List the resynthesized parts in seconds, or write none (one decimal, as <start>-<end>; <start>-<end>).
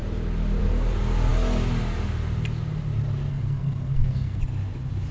3.3-4.4